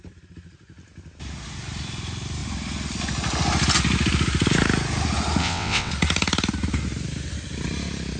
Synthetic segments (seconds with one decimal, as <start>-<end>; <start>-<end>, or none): 5.4-5.9